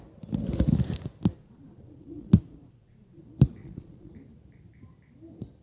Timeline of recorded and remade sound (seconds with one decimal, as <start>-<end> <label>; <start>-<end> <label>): 0.0-1.4 recorded; 1.4-3.2 remade; 3.2-3.6 recorded; 3.6-4.1 remade; 4.1-5.6 recorded